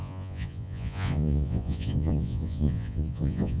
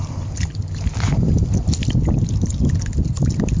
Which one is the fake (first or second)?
first